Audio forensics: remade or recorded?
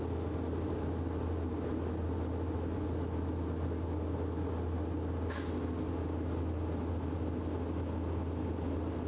recorded